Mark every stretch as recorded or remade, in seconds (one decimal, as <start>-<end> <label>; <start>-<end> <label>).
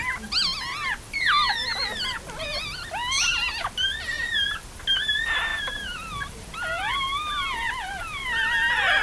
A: 0.0-5.5 recorded; 5.5-8.2 remade; 8.2-9.0 recorded